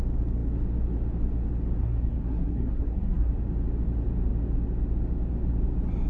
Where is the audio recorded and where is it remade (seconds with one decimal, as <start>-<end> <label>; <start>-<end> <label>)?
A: 0.0-1.8 recorded; 1.8-3.3 remade; 3.3-6.1 recorded

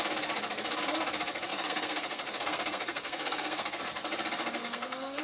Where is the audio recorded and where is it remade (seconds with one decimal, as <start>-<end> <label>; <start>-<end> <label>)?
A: 0.0-1.5 recorded; 1.5-3.8 remade; 3.8-4.6 recorded; 4.6-5.2 remade

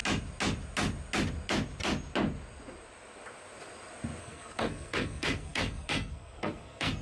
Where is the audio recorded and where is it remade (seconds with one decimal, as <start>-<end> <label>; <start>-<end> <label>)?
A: 0.0-4.2 recorded; 4.2-7.0 remade

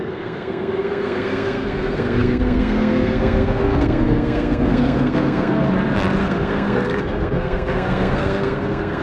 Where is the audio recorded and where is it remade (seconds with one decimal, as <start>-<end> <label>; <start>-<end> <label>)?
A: 0.0-5.6 remade; 5.6-6.2 recorded; 6.2-9.0 remade

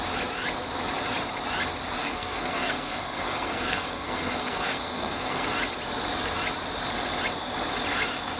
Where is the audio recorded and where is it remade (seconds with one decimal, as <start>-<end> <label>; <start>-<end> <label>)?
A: 0.0-2.0 recorded; 2.0-5.5 remade; 5.5-8.4 recorded

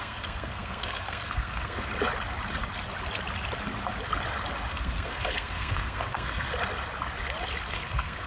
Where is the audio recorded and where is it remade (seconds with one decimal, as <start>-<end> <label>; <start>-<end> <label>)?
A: 0.0-1.9 remade; 1.9-4.7 recorded; 4.7-6.5 remade; 6.5-7.7 recorded; 7.7-8.3 remade

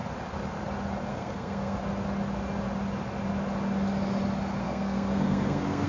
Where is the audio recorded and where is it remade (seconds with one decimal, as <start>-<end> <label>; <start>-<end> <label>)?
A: 0.0-1.1 recorded; 1.1-1.8 remade; 1.8-4.6 recorded; 4.6-5.9 remade